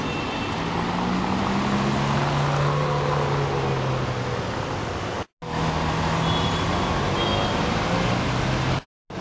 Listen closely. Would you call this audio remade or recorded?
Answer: recorded